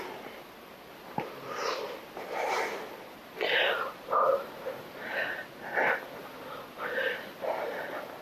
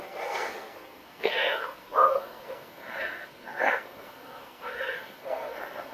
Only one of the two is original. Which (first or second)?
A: first